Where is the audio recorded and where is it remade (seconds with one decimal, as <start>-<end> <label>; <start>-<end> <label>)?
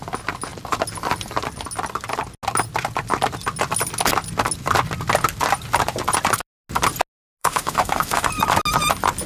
0.0-7.4 recorded; 7.4-8.3 remade; 8.3-9.3 recorded